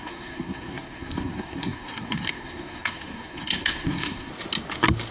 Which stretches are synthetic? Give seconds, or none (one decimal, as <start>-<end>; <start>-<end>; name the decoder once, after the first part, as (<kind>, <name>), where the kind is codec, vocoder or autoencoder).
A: 0.0-4.3 (codec, SNAC)

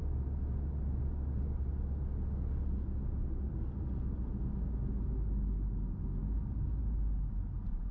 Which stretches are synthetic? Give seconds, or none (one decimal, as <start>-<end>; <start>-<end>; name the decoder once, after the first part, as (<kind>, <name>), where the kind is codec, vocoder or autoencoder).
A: none

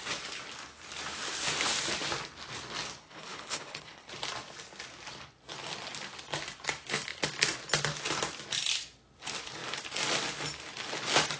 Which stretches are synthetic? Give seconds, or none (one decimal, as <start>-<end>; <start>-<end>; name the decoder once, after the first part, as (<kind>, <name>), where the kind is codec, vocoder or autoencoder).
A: 3.0-4.1 (codec, HILCodec)

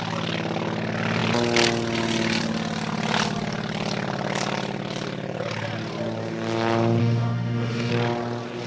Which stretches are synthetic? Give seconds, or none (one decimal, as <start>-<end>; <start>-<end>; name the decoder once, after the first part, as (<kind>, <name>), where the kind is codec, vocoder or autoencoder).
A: 7.0-7.9 (autoencoder, DAC-VAE)

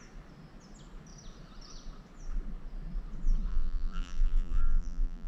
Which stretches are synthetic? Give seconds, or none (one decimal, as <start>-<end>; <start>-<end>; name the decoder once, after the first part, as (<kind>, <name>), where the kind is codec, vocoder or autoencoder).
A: 3.5-5.3 (vocoder, BigVGAN v2)

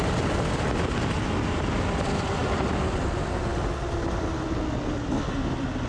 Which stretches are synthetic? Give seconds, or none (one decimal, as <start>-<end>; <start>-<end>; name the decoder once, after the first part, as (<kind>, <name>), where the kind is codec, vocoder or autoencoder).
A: none